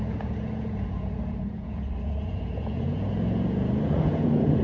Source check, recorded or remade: remade